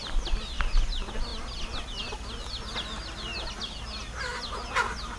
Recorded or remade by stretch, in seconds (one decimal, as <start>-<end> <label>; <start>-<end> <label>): 0.0-5.2 recorded